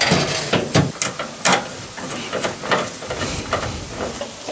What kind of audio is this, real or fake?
real